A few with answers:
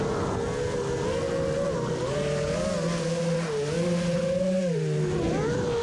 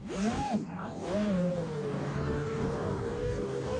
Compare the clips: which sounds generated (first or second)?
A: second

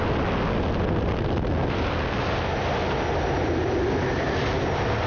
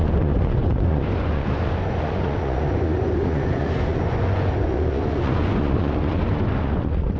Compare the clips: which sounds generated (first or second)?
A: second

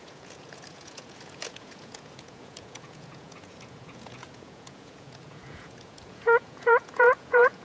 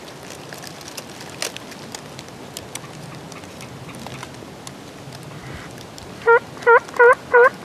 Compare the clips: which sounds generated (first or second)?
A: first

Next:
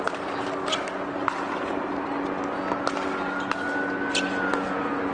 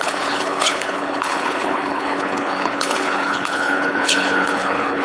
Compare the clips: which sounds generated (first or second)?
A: second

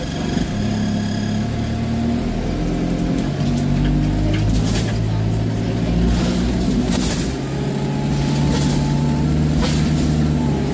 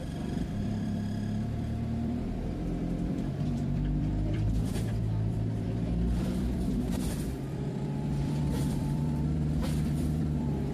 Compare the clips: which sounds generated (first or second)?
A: second